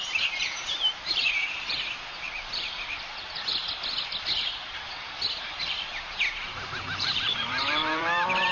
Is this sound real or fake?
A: fake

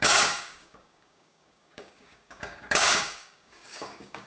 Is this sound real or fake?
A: fake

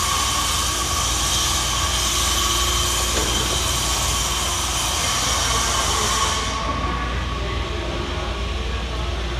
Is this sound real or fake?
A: real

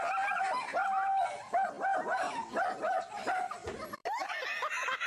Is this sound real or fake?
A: real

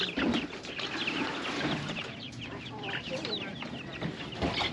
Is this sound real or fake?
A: fake